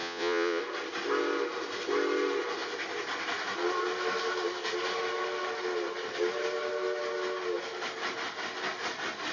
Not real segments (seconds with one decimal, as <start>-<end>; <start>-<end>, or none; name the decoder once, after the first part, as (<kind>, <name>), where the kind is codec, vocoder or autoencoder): 0.0-0.6 (vocoder, Vocos)